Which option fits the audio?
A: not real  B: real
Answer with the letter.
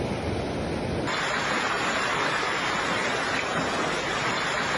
B